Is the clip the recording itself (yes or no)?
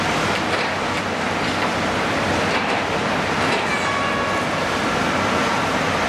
yes